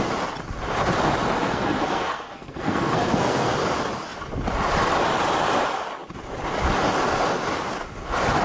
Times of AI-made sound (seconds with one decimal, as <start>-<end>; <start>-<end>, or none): 1.4-3.5